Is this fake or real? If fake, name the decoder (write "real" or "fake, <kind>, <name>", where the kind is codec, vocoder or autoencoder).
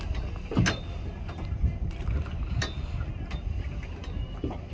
real